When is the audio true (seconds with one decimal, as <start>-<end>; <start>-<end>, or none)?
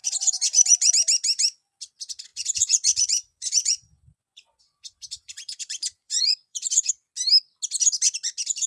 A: 0.9-2.3; 6.9-8.7